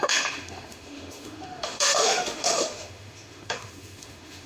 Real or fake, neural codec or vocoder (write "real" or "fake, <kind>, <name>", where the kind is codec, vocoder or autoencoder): fake, autoencoder, DAC-VAE